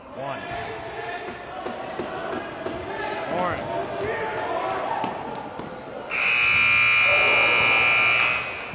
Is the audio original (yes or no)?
yes